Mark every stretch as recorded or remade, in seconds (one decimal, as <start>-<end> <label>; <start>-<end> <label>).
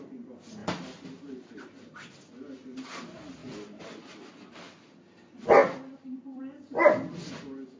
0.0-3.4 recorded; 3.4-4.5 remade; 4.5-5.6 recorded; 5.6-6.4 remade; 6.4-7.8 recorded